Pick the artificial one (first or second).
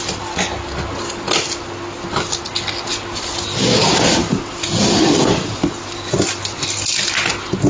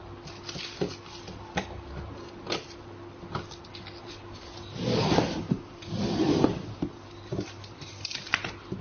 second